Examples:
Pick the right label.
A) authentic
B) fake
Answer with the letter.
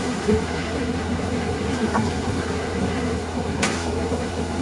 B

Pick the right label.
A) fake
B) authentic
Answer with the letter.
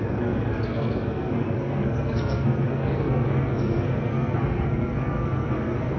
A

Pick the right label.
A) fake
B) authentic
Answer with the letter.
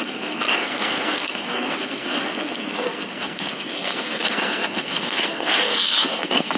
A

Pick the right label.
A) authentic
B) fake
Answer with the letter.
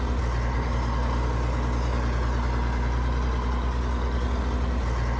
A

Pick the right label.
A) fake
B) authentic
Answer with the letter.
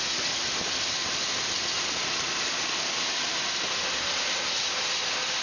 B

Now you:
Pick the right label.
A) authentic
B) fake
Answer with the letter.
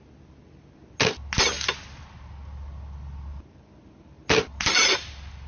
A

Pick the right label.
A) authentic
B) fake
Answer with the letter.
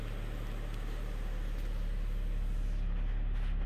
A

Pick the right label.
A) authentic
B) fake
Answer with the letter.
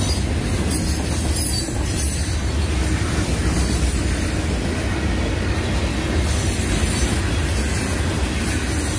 A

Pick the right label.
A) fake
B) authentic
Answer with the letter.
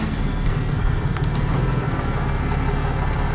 A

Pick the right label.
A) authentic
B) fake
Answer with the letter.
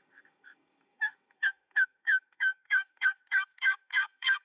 B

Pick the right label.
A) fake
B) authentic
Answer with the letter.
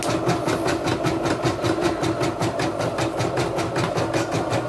B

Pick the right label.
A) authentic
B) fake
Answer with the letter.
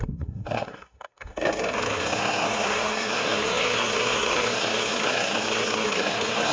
B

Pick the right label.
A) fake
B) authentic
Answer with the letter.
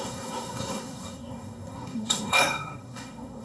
A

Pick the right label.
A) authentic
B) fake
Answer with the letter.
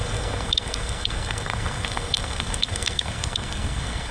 B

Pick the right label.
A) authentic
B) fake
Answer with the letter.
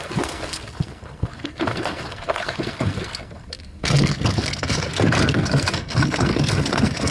B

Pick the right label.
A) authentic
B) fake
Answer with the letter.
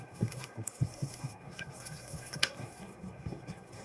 B